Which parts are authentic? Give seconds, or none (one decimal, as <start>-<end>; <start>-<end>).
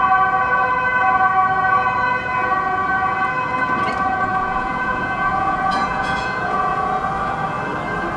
0.0-4.3; 6.9-8.2